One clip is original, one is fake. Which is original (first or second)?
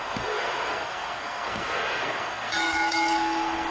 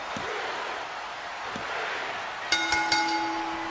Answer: second